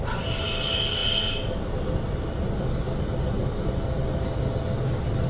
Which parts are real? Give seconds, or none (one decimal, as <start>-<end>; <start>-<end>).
0.0-5.3